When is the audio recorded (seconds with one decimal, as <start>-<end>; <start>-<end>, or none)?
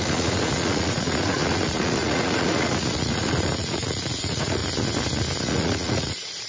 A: 4.6-5.4